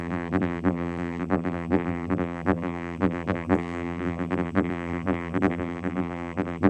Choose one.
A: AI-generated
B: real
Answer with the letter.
A